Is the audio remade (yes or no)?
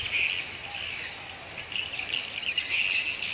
no